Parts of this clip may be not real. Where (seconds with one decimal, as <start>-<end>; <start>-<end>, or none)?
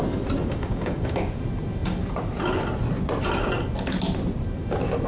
0.4-1.4